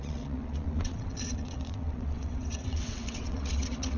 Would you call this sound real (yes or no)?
no